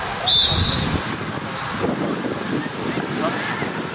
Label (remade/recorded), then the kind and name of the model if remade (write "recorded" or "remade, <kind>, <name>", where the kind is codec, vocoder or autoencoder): recorded